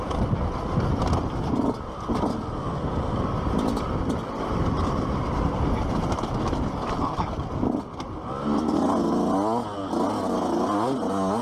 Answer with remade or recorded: recorded